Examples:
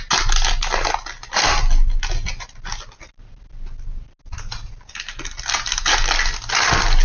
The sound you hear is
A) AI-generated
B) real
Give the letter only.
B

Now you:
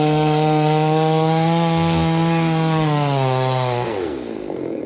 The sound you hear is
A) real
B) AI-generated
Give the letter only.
B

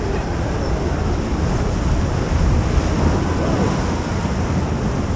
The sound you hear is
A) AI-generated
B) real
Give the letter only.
B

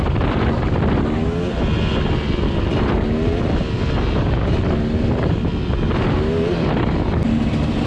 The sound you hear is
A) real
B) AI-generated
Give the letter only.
A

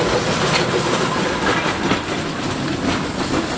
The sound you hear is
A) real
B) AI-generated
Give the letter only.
A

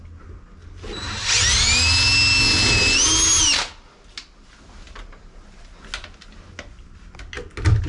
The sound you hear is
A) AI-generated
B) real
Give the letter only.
B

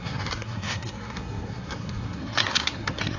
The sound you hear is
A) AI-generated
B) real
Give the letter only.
A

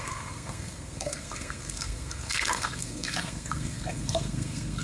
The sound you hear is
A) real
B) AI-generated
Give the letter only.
B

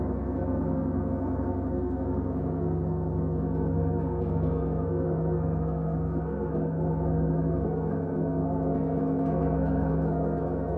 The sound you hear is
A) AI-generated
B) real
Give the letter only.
A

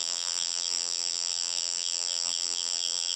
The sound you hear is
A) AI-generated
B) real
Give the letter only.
A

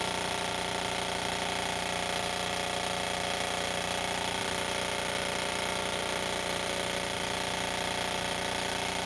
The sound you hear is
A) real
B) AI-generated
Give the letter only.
A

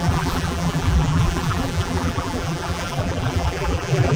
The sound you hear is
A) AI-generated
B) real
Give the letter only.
A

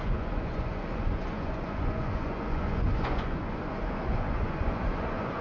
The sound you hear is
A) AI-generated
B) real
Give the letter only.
A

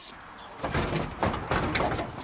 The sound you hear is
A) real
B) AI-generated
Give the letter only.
A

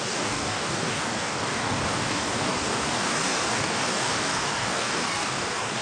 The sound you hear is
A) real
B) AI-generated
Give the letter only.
B